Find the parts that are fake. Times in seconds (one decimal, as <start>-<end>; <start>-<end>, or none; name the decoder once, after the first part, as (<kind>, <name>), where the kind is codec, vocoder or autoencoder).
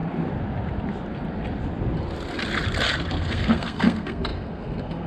3.1-5.1 (codec, SNAC)